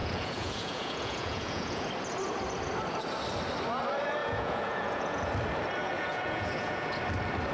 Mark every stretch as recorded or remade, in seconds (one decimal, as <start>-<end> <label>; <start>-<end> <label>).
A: 0.0-1.9 remade; 1.9-4.2 recorded; 4.2-5.3 remade; 5.3-5.8 recorded; 5.8-7.0 remade; 7.0-7.5 recorded